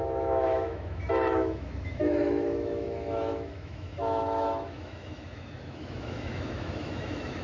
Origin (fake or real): fake